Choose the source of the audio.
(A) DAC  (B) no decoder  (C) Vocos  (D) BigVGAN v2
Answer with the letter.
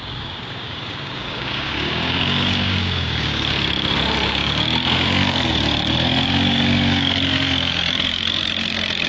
A